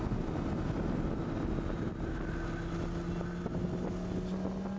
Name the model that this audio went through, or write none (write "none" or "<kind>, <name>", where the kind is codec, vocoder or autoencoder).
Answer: none